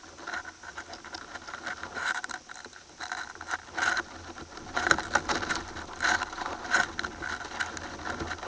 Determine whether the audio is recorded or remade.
recorded